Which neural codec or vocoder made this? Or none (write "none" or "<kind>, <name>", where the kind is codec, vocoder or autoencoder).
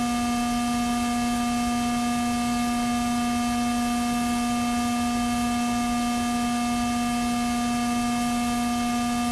none